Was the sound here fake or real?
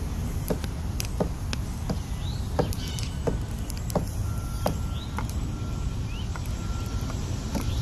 real